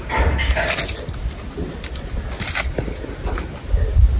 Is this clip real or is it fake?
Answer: real